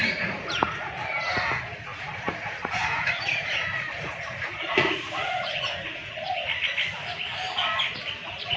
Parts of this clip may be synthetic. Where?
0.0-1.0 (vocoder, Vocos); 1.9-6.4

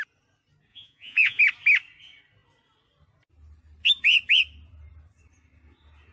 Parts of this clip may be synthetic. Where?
0.7-1.4 (vocoder, Vocos)

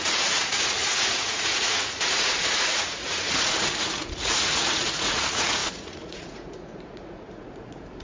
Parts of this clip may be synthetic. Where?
0.0-8.0 (vocoder, Vocos)

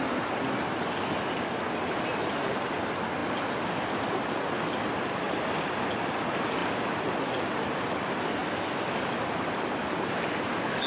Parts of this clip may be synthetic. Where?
none

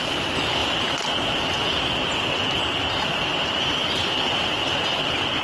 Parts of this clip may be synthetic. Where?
none

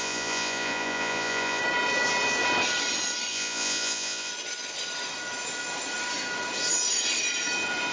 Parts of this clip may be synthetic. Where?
0.0-1.6 (vocoder, Vocos); 3.3-4.3